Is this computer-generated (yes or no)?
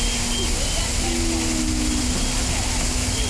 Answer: no